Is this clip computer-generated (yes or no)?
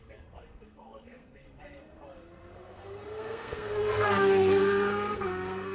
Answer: yes